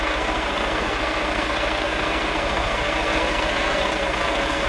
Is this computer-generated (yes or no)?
yes